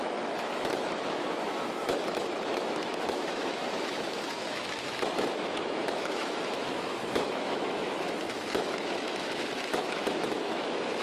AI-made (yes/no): yes